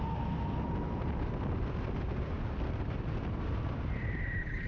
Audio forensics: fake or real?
real